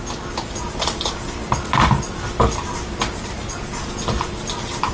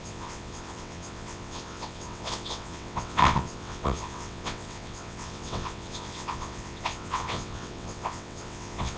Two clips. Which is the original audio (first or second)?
first